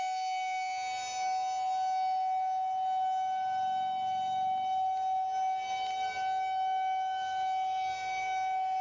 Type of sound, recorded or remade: recorded